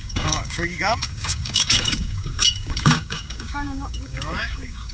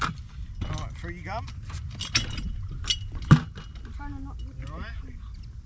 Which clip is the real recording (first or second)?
second